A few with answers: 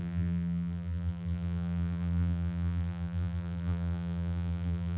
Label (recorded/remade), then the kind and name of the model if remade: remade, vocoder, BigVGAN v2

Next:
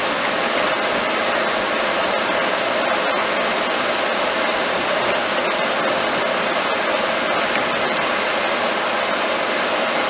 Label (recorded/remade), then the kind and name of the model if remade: recorded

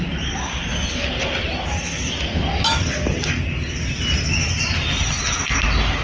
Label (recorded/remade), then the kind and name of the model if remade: recorded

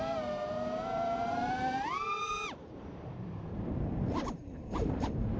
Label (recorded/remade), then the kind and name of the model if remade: remade, vocoder, BigVGAN v2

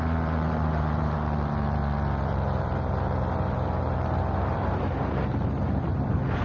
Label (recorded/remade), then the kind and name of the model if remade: remade, vocoder, BigVGAN v2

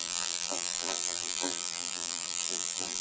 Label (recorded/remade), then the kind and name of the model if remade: remade, vocoder, BigVGAN v2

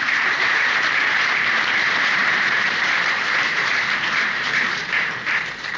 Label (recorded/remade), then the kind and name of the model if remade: remade, vocoder, BigVGAN v2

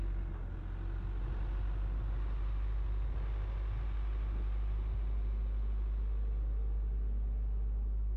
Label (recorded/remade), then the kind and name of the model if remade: recorded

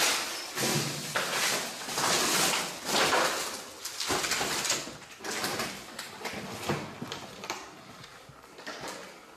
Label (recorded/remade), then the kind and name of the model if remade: recorded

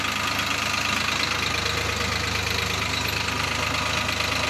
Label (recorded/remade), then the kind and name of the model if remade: recorded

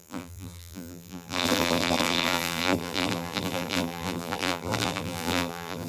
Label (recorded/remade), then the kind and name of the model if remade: remade, vocoder, BigVGAN v2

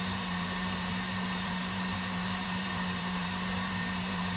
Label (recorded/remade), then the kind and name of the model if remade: remade, vocoder, BigVGAN v2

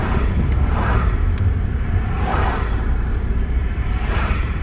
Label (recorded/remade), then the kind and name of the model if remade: remade, vocoder, BigVGAN v2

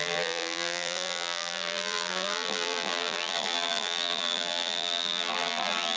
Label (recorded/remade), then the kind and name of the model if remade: remade, vocoder, BigVGAN v2